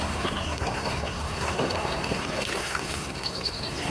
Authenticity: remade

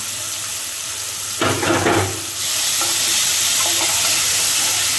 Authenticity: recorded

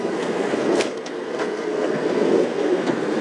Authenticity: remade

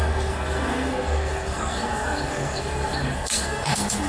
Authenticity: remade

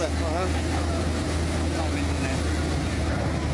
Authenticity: recorded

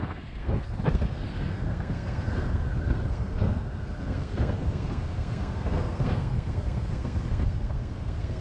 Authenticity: remade